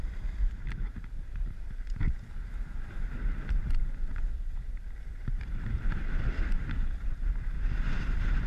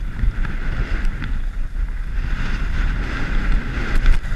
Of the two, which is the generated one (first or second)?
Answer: first